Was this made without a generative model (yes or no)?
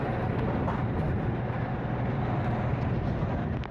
yes